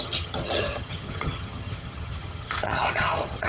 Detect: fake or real fake